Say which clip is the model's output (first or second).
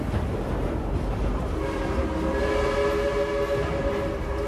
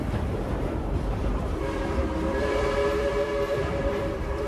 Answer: second